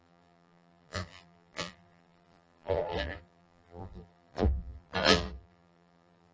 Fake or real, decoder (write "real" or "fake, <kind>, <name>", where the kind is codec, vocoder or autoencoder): fake, vocoder, BigVGAN v2